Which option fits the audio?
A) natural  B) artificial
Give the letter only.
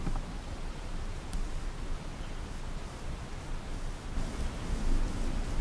A